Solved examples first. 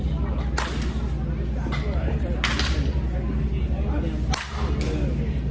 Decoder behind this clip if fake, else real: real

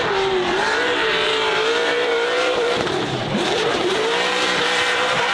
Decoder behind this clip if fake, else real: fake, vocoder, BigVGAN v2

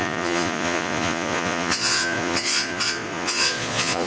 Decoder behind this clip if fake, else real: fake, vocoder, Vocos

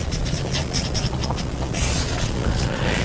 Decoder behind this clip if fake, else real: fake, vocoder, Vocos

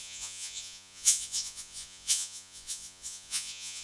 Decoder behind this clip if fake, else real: fake, vocoder, Vocos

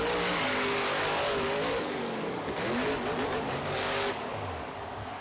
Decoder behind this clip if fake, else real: fake, codec, DAC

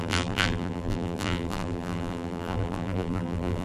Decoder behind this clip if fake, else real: fake, vocoder, BigVGAN v2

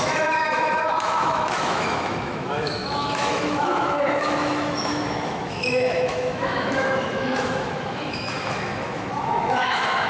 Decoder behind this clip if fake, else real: fake, autoencoder, DAC-VAE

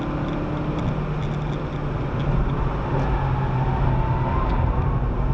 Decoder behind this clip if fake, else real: real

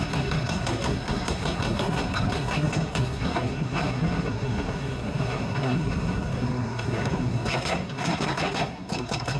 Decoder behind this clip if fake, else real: fake, codec, SNAC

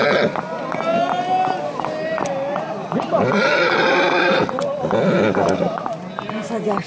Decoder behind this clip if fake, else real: real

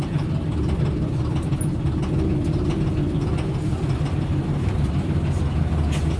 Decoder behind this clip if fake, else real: real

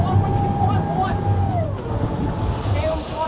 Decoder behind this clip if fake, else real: real